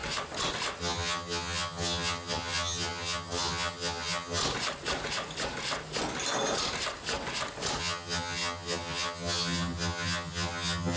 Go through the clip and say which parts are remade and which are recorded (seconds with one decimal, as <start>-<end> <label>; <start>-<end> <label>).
0.0-0.8 recorded; 0.8-4.4 remade; 4.4-7.8 recorded; 7.8-11.0 remade

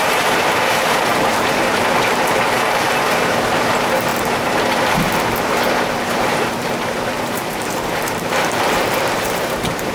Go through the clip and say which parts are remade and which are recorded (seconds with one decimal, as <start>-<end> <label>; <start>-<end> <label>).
0.0-9.9 remade

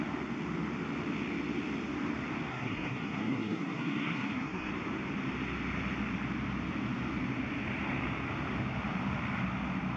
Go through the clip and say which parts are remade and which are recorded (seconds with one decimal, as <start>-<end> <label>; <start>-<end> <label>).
0.0-2.5 recorded; 2.5-4.7 remade; 4.7-10.0 recorded

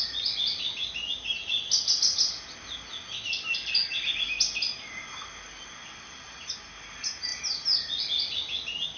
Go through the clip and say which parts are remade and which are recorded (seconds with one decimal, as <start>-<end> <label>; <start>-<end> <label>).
0.0-9.0 recorded

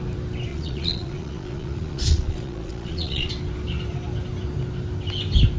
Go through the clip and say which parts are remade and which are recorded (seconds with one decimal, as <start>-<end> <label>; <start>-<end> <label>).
0.0-0.5 recorded; 0.5-3.3 remade; 3.3-5.6 recorded

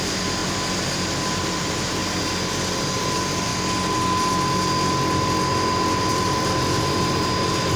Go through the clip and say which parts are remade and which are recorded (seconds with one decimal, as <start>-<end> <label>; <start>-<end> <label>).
0.0-2.0 remade; 2.0-2.8 recorded; 2.8-3.5 remade; 3.5-6.0 recorded; 6.0-7.8 remade

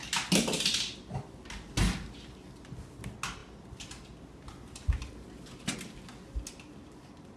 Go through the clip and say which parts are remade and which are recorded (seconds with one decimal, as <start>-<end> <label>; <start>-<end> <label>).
0.0-7.4 recorded

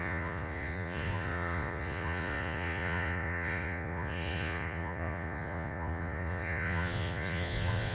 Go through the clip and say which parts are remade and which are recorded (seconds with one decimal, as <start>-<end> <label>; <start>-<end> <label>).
0.0-7.9 remade